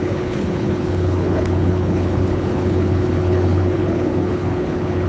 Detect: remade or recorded remade